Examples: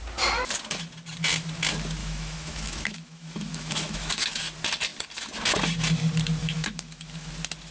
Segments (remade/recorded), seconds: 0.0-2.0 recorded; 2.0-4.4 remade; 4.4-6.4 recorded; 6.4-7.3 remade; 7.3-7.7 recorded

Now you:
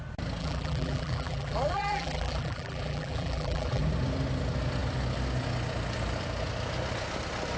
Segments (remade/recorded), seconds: 0.0-0.4 recorded; 0.4-3.8 remade; 3.8-7.6 recorded

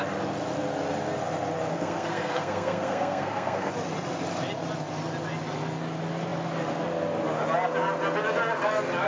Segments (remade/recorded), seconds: 0.0-1.7 recorded; 1.7-3.7 remade; 3.7-9.1 recorded